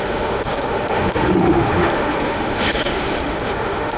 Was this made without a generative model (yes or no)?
no